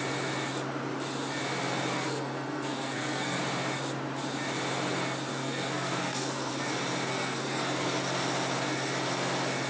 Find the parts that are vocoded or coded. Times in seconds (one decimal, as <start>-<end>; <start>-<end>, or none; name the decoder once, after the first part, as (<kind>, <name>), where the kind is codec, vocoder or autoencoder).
1.9-3.4 (codec, SNAC); 5.3-6.5; 7.1-8.0